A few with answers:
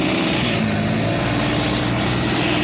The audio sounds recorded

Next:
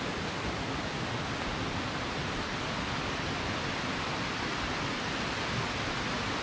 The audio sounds recorded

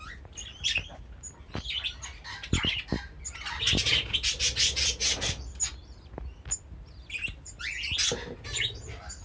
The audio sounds recorded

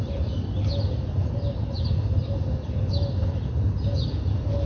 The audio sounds recorded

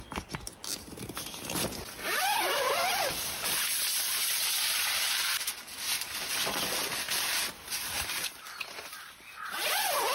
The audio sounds recorded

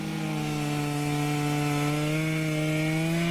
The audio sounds recorded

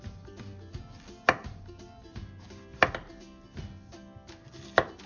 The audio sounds recorded